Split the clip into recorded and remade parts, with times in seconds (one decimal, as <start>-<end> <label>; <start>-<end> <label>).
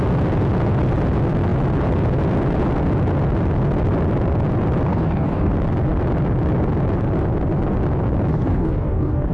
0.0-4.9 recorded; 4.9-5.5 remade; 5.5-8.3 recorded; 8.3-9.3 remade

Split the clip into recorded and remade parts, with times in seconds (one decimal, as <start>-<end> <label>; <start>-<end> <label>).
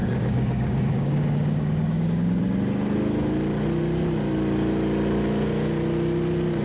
0.0-2.4 remade; 2.4-6.6 recorded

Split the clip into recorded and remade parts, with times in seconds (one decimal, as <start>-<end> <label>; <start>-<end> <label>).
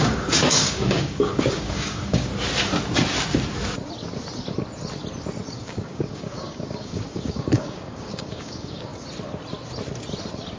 0.0-2.3 remade; 2.3-5.5 recorded; 5.5-8.9 remade; 8.9-10.6 recorded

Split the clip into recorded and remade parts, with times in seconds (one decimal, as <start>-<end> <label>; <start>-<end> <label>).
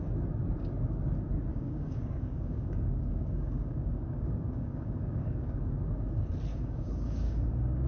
0.0-1.5 recorded; 1.5-5.6 remade; 5.6-6.5 recorded; 6.5-7.9 remade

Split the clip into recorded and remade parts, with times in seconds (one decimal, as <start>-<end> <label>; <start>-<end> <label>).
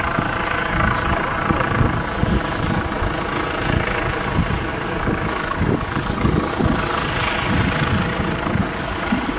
0.0-4.7 recorded; 4.7-6.5 remade; 6.5-8.6 recorded; 8.6-9.4 remade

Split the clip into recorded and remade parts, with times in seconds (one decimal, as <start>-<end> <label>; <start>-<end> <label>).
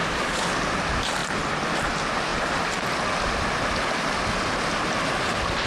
0.0-0.6 remade; 0.6-5.7 recorded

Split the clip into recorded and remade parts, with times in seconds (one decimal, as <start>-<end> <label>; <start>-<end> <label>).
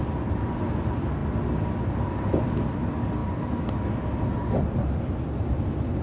0.0-6.0 recorded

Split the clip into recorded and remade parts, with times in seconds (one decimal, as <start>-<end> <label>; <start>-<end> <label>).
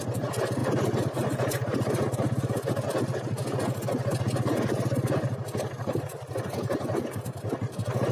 0.0-8.1 recorded